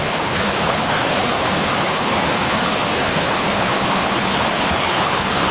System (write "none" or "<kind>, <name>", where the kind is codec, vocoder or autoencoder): codec, HILCodec